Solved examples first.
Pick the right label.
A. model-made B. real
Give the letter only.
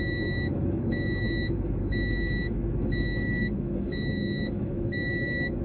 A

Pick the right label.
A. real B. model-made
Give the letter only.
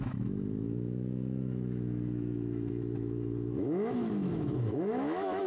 B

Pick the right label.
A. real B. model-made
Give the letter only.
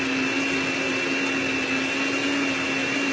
A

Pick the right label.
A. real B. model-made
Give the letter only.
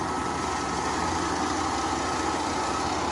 A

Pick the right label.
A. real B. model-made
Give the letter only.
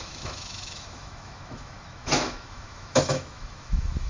B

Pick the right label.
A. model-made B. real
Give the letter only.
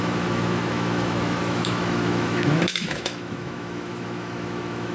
A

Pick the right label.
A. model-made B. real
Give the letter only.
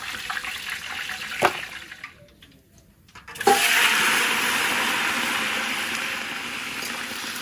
B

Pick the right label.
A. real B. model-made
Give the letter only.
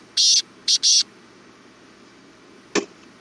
A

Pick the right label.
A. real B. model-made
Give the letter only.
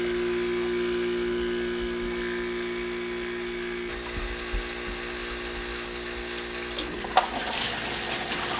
A